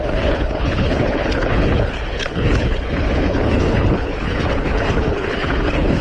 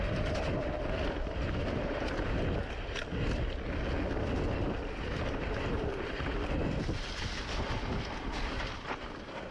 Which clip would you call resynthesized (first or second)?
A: first